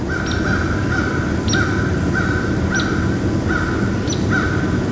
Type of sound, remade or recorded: recorded